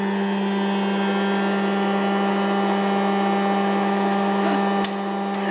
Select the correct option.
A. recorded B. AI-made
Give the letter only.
A